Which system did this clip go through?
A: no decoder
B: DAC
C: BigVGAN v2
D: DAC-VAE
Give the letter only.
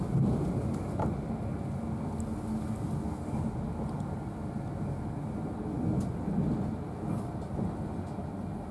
A